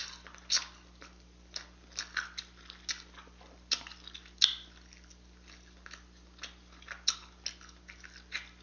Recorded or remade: recorded